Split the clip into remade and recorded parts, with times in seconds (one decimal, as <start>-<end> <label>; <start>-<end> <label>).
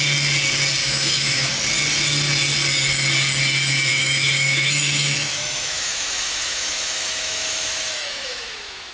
0.0-0.8 recorded; 0.8-1.5 remade; 1.5-3.9 recorded; 3.9-8.9 remade